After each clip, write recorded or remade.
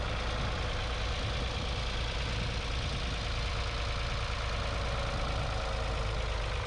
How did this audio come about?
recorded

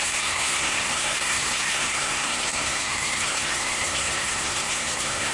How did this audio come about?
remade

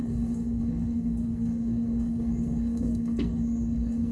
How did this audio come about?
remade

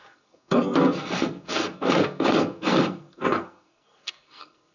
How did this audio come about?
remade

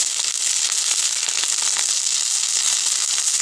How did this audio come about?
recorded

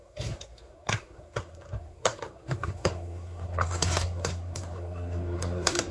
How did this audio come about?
remade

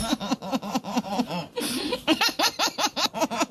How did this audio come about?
recorded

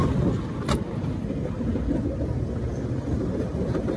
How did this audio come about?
recorded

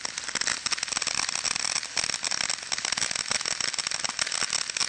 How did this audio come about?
recorded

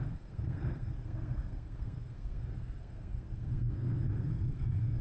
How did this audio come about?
remade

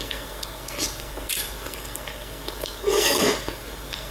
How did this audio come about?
remade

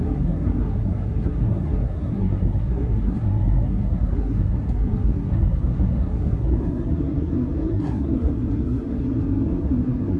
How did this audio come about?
remade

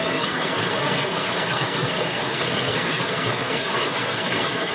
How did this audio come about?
remade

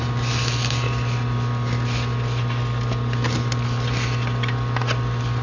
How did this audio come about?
recorded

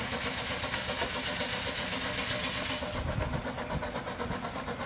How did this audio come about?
recorded